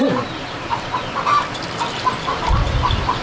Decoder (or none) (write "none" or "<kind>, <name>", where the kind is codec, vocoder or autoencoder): vocoder, BigVGAN v2